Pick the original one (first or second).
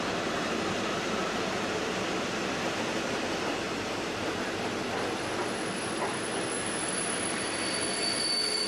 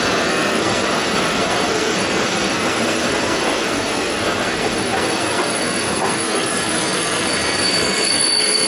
first